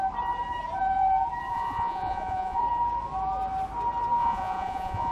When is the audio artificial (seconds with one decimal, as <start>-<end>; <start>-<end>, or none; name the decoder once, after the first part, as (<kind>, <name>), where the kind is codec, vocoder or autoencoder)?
1.5-2.6 (vocoder, Vocos); 4.2-5.1